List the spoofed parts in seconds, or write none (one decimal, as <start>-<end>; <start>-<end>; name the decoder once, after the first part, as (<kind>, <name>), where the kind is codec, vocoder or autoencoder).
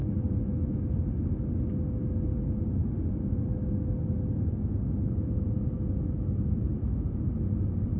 none